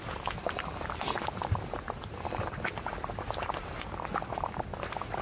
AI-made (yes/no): no